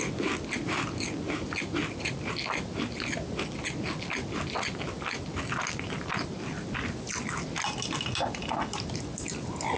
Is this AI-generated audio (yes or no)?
no